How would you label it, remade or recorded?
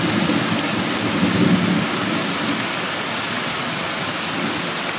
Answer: recorded